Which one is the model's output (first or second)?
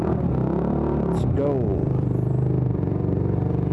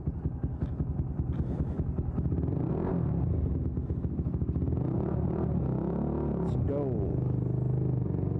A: first